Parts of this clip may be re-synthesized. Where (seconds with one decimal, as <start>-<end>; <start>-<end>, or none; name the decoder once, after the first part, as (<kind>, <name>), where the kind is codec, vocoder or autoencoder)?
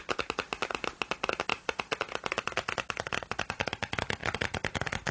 1.5-2.1 (vocoder, BigVGAN v2)